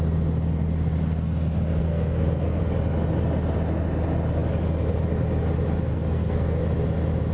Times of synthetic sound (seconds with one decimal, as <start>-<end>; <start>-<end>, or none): 1.8-2.6; 5.9-6.6